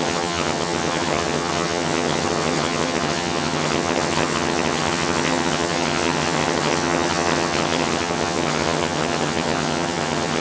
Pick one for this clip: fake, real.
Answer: fake